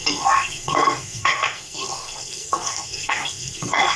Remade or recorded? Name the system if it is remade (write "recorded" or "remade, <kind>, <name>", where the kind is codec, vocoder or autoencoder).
remade, codec, SNAC